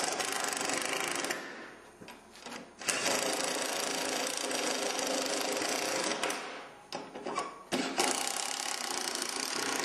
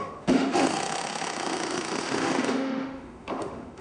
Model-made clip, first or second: second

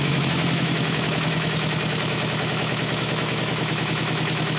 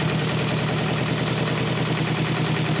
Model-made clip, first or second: first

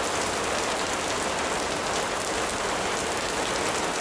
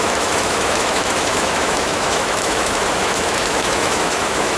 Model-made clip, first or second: second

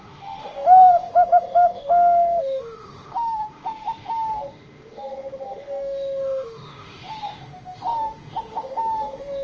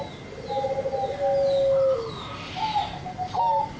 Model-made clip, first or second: first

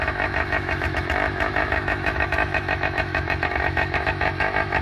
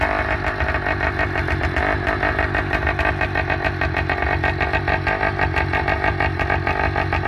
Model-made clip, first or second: first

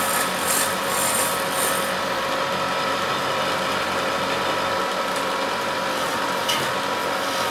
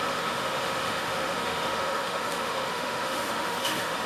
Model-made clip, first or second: second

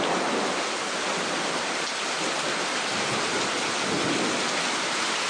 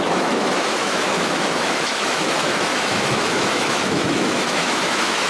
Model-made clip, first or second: second